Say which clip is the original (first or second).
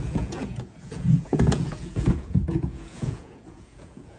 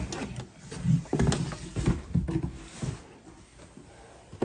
second